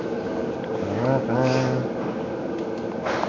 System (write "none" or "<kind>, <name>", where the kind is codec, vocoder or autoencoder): none